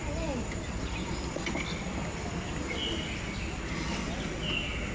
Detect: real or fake real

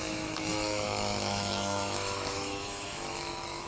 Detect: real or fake fake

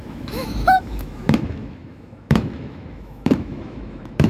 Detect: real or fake fake